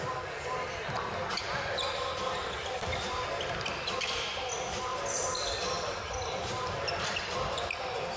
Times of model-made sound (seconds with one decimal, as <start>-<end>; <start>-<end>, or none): 0.0-1.4; 2.2-8.2